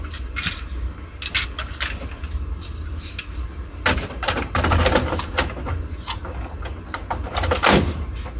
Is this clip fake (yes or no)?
no